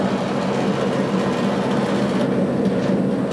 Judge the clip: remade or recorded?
recorded